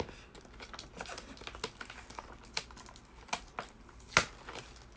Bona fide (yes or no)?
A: yes